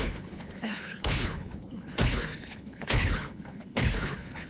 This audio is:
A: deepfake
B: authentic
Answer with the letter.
A